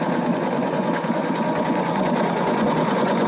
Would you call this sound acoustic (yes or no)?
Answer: no